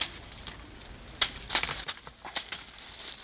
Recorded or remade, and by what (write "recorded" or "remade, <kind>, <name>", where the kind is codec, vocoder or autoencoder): recorded